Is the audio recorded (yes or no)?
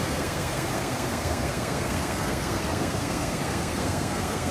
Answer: no